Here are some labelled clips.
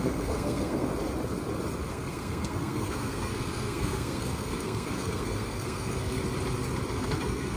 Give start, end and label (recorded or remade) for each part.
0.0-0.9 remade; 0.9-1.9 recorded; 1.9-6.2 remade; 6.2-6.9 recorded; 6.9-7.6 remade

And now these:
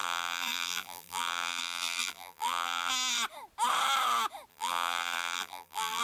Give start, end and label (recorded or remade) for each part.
0.0-2.9 remade; 2.9-4.5 recorded; 4.5-6.0 remade

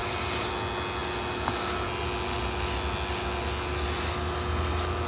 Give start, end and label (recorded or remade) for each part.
0.0-0.5 remade; 0.5-5.1 recorded

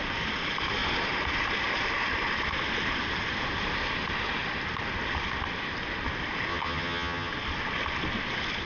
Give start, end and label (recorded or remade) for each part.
0.0-6.5 recorded; 6.5-7.3 remade; 7.3-8.7 recorded

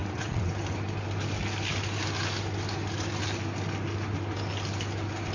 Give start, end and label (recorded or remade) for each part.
0.0-0.5 remade; 0.5-5.3 recorded

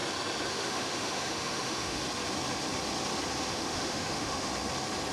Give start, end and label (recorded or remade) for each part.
0.0-0.5 recorded; 0.5-2.0 remade; 2.0-3.5 recorded; 3.5-4.5 remade; 4.5-5.1 recorded

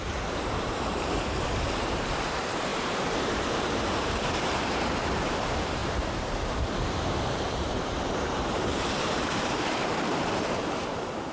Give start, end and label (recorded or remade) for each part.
0.0-11.3 remade

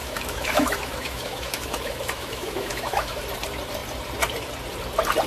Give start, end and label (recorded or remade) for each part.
0.0-3.2 remade; 3.2-5.3 recorded